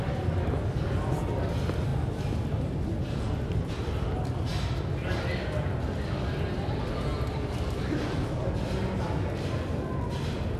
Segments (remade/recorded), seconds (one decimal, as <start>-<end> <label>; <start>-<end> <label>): 0.0-10.6 recorded